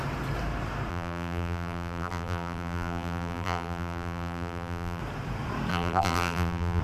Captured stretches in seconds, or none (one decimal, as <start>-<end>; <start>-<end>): 0.0-0.9; 5.0-5.7